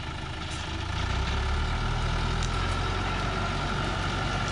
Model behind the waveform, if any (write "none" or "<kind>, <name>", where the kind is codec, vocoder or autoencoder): none